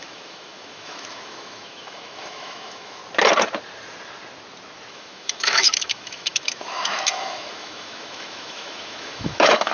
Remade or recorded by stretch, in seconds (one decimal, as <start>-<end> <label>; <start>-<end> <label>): 0.0-3.0 remade; 3.0-4.9 recorded; 4.9-9.7 remade